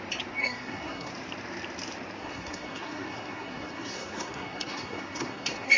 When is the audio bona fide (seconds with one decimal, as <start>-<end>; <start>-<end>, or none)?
0.0-0.4; 1.1-2.2